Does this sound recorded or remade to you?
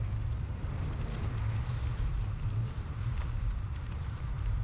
remade